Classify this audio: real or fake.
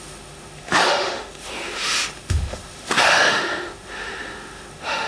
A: fake